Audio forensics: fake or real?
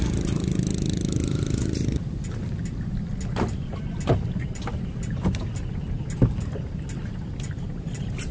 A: real